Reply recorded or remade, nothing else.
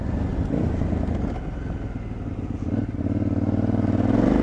recorded